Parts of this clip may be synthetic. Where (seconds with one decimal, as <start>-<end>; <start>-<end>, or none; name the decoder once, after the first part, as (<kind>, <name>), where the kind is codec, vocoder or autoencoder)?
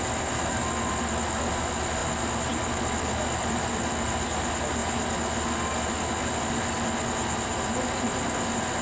none